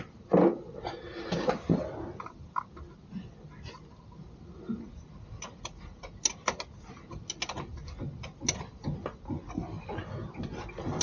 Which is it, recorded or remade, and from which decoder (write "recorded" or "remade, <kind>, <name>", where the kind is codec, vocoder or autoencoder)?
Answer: recorded